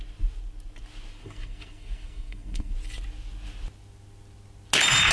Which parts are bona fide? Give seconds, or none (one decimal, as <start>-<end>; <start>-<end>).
0.0-1.2; 2.7-5.1